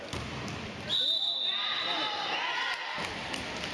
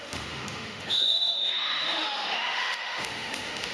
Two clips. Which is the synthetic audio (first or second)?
second